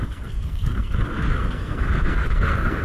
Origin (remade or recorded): remade